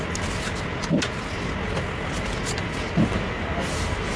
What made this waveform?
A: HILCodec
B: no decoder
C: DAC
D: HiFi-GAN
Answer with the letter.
B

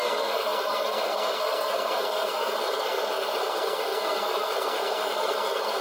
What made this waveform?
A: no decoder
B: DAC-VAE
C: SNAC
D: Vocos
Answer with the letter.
C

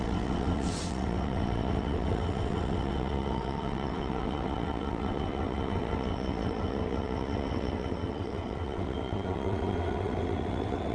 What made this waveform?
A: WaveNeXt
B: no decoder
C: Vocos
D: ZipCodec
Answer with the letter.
A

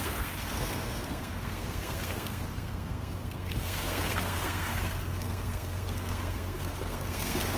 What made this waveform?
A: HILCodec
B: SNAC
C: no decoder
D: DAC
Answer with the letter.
B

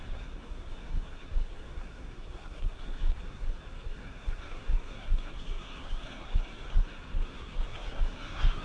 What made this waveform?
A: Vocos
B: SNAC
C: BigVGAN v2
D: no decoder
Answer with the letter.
B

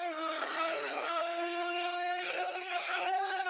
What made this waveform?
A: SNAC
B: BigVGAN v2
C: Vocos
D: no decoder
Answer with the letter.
A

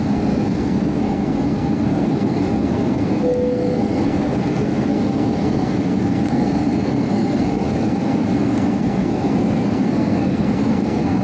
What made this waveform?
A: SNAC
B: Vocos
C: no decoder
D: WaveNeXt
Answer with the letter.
A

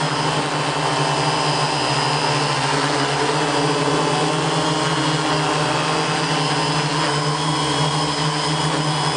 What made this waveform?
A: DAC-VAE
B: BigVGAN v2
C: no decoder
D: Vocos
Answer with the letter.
C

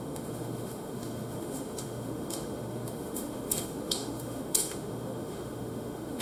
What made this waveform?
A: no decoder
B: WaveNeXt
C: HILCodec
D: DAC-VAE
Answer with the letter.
D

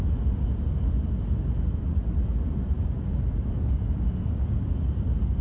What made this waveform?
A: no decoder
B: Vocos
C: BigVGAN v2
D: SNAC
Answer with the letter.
A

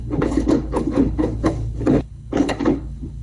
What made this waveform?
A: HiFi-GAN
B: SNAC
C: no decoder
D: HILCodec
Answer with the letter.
D